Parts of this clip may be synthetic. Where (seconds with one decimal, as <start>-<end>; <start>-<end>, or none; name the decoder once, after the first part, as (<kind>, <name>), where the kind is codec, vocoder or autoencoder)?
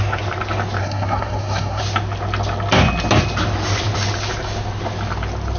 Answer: 0.8-1.8 (codec, SNAC)